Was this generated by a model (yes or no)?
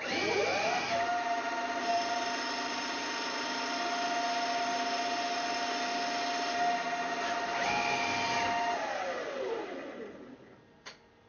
no